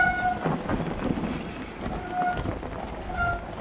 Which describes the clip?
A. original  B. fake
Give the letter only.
A